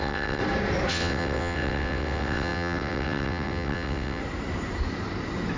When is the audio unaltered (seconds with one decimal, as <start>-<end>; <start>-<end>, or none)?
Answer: 0.4-0.9; 4.2-5.6